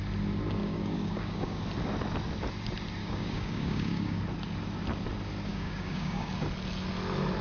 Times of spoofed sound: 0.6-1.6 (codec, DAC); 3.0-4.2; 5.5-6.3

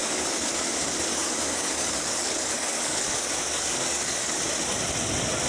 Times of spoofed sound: 0.0-0.7 (codec, DAC); 1.1-4.4